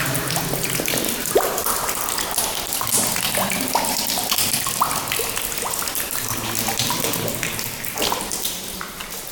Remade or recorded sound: recorded